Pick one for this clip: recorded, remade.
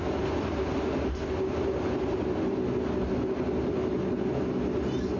recorded